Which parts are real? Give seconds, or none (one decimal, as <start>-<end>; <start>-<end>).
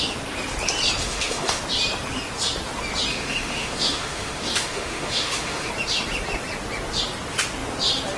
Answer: 0.0-1.0; 1.6-3.1; 5.7-8.2